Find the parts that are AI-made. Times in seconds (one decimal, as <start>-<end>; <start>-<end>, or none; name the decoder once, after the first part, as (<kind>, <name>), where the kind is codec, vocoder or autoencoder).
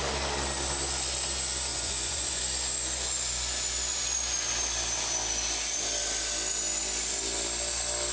1.7-2.4 (vocoder, Vocos)